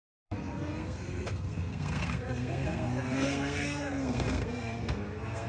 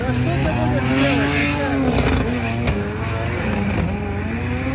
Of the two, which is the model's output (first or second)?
first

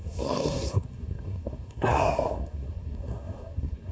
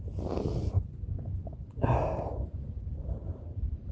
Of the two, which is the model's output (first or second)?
first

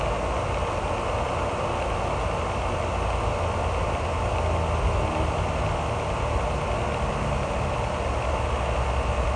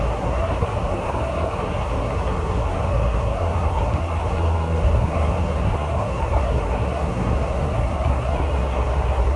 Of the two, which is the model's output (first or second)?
second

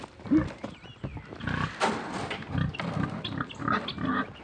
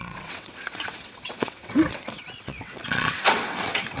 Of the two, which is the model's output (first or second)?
second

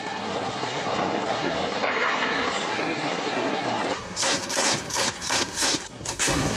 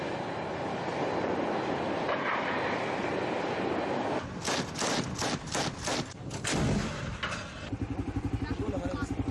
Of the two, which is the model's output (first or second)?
first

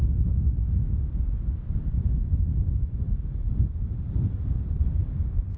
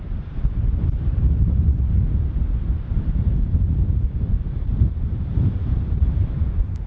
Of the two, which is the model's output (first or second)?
second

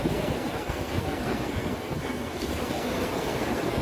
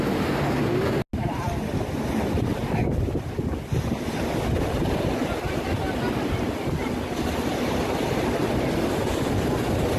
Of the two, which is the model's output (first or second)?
first